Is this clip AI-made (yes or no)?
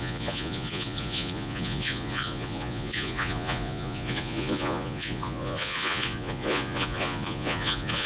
yes